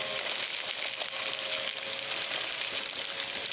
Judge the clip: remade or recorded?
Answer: recorded